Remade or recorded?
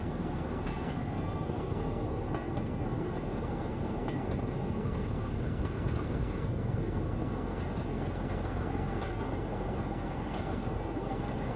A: remade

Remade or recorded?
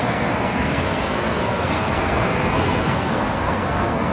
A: remade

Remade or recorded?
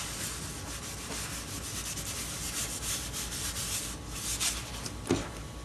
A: recorded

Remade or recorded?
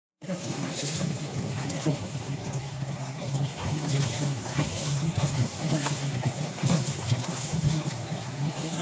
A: remade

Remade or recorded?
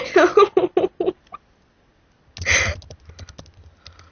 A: recorded